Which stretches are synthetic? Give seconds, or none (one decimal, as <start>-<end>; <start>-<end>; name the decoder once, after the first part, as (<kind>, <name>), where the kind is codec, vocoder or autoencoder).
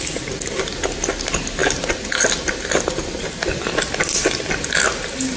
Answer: none